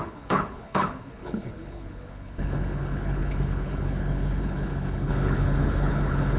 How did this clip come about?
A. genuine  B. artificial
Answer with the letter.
B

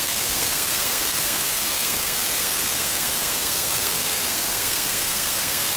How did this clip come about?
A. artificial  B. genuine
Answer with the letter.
A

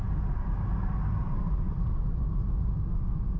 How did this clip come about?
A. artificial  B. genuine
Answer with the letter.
B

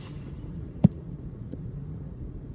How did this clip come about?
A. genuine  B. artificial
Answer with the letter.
B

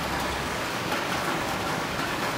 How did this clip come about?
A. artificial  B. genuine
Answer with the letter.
A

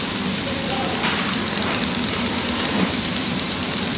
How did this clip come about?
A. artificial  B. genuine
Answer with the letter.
A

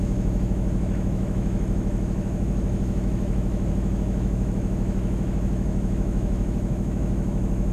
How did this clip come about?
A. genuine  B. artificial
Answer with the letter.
B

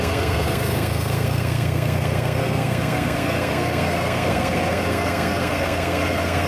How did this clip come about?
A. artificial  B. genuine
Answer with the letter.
A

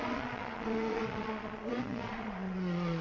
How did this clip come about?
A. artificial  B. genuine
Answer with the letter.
A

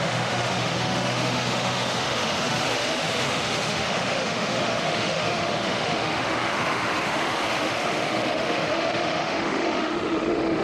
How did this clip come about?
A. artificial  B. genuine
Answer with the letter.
A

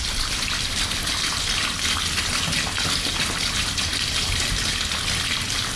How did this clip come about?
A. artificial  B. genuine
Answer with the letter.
A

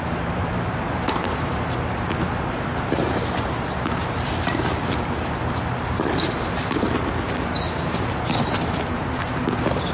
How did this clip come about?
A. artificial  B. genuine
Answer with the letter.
A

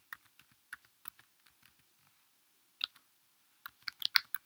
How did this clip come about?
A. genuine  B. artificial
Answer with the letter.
A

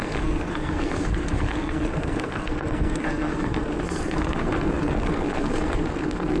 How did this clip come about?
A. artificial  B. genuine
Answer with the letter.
A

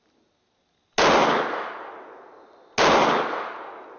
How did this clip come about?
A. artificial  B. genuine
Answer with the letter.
B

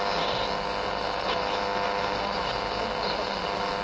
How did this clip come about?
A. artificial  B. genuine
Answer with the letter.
B